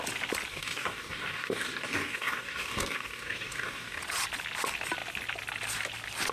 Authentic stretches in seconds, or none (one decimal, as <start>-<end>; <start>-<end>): 0.0-0.5; 4.0-6.3